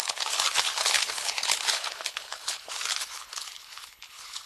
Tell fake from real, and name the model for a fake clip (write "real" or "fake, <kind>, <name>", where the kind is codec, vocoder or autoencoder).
fake, codec, HILCodec